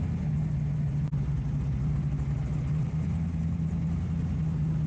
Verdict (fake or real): real